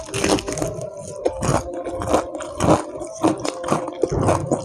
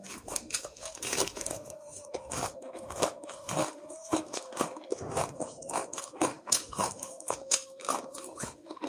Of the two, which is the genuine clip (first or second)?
first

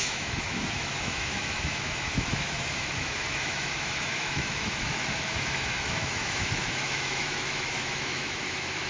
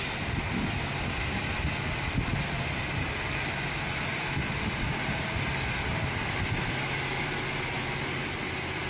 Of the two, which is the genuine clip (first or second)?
second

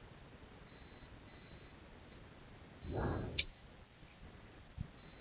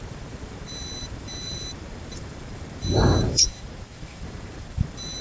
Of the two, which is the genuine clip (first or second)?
first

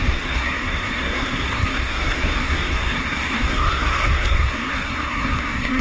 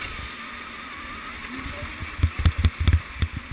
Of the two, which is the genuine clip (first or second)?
second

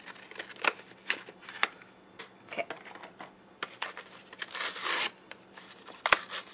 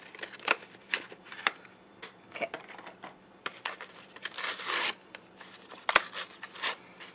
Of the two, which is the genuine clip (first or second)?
first